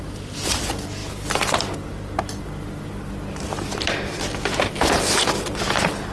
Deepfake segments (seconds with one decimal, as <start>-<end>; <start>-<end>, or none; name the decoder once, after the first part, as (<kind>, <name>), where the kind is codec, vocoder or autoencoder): none